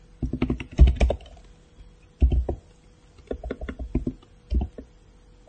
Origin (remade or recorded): recorded